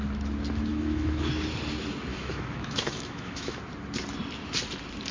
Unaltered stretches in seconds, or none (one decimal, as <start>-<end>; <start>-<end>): 0.0-0.7; 1.3-2.1; 3.6-5.1